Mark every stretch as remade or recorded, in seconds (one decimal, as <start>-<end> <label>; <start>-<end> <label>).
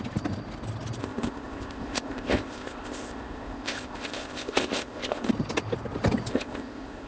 0.0-1.0 recorded; 1.0-5.3 remade; 5.3-6.3 recorded; 6.3-7.1 remade